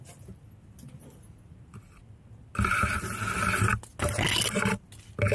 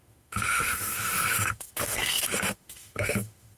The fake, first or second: second